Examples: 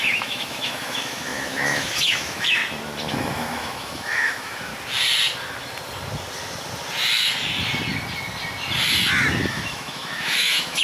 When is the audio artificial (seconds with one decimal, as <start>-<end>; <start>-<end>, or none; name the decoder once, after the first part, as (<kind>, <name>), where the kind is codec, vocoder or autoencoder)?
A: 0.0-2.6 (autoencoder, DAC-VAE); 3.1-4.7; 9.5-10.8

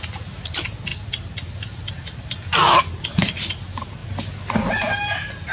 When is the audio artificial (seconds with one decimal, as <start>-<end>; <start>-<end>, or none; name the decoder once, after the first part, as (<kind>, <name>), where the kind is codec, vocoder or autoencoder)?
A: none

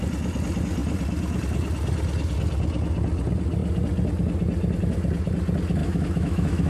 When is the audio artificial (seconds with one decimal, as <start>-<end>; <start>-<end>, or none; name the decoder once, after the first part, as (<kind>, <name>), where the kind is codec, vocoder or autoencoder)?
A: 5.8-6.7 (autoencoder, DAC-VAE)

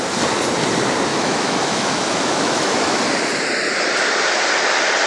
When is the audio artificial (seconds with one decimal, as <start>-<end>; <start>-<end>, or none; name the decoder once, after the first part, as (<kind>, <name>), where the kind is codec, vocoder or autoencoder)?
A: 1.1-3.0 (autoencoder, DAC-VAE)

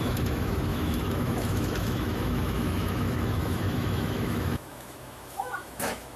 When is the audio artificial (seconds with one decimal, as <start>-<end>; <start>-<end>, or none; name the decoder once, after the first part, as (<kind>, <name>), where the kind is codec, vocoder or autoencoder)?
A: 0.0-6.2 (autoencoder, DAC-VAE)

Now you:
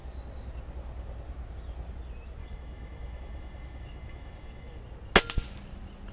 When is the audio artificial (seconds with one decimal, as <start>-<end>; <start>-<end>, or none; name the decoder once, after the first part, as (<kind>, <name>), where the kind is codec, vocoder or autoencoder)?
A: 2.4-4.8 (autoencoder, DAC-VAE)

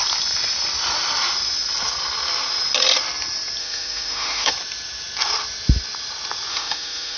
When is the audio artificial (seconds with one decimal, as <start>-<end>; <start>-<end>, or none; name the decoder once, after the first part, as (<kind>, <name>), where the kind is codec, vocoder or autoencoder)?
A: 3.6-4.5 (autoencoder, DAC-VAE); 6.5-7.2